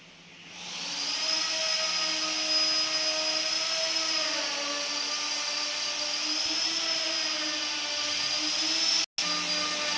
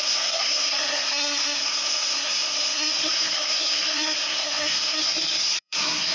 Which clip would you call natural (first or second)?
first